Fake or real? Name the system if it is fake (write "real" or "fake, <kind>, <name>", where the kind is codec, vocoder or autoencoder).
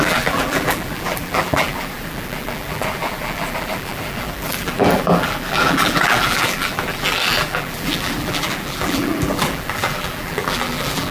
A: fake, vocoder, BigVGAN v2